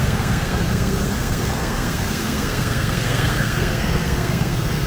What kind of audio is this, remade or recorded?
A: remade